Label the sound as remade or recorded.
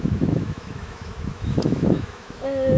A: remade